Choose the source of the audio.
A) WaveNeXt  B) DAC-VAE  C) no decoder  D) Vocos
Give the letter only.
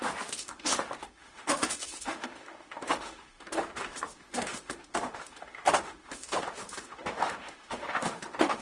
B